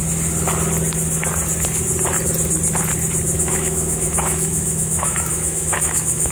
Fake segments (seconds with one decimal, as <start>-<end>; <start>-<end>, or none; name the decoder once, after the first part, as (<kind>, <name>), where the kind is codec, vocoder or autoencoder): 3.4-6.3 (autoencoder, DAC-VAE)